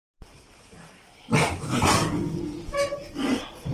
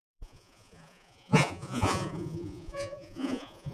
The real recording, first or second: first